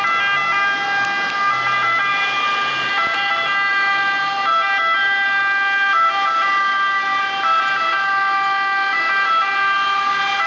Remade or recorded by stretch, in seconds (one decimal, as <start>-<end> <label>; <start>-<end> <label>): 0.0-2.1 recorded; 2.1-2.9 remade; 2.9-3.7 recorded; 3.7-5.4 remade; 5.4-10.5 recorded